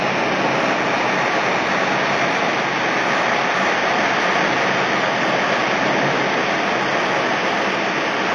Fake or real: real